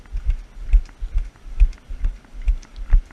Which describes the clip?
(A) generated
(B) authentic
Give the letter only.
B